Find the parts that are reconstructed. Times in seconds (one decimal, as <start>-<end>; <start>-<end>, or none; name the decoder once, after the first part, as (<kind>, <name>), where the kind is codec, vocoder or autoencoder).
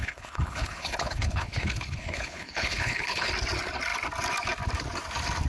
0.0-3.3 (codec, HILCodec)